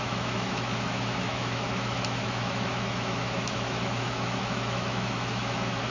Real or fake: fake